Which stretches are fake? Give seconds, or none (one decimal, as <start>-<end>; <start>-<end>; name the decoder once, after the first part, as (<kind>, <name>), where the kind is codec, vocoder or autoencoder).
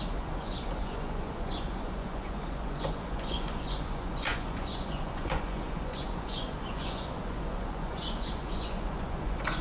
0.0-9.6 (vocoder, Vocos)